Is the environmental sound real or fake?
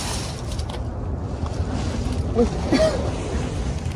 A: real